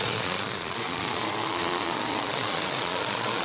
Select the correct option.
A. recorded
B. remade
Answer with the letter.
B